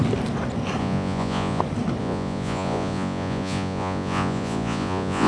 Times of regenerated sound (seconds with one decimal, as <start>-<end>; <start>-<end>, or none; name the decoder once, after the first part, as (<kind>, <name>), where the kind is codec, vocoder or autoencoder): 0.8-1.6 (vocoder, Vocos); 2.0-5.3